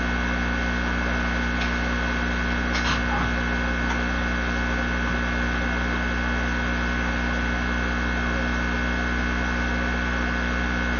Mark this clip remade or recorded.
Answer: recorded